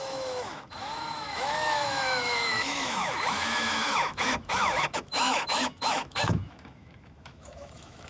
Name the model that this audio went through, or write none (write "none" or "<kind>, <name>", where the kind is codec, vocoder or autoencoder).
autoencoder, DAC-VAE